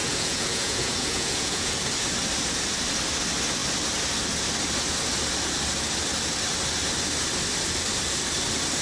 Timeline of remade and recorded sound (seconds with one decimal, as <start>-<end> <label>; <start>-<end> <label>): 0.0-1.7 remade; 1.7-8.8 recorded